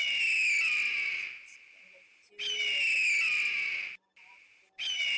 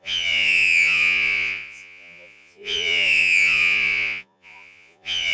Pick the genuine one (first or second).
first